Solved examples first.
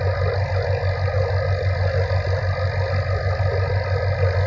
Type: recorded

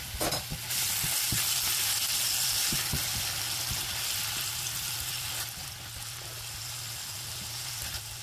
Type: recorded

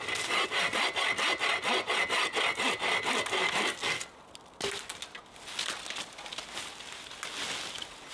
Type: recorded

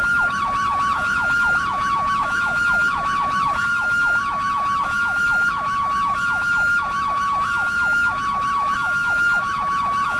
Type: remade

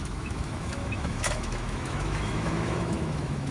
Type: remade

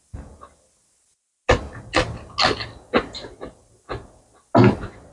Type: recorded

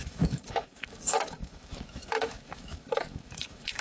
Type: remade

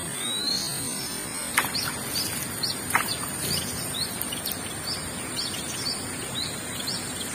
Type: recorded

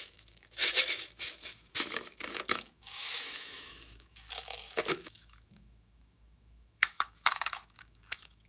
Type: remade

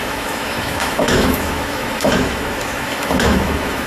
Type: remade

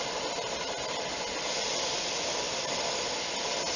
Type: recorded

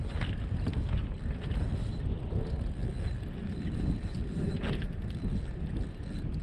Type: recorded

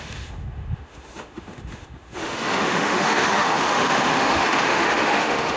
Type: remade